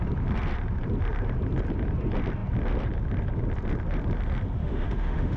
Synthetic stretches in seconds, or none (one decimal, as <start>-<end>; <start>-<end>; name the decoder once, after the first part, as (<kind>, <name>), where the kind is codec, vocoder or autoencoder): 4.6-5.4 (autoencoder, DAC-VAE)